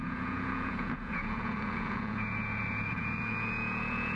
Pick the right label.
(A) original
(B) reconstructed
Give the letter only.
B